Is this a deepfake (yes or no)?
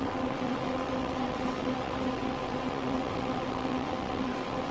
yes